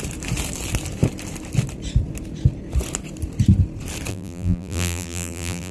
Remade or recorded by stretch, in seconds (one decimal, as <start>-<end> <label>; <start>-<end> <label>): 0.0-4.1 recorded; 4.1-5.7 remade